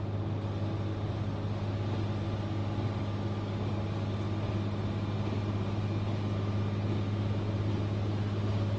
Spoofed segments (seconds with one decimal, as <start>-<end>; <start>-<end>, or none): none